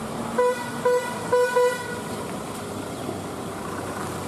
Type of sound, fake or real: real